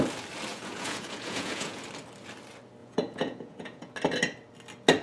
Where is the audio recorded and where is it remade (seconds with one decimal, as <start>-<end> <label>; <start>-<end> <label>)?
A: 0.0-0.5 recorded; 0.5-1.8 remade; 1.8-2.8 recorded; 2.8-3.9 remade; 3.9-5.0 recorded